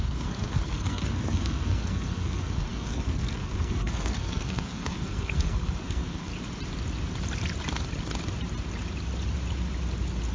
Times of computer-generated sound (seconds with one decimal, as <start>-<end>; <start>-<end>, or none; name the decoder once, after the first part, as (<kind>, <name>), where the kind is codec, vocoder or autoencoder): 0.0-6.3 (codec, SNAC)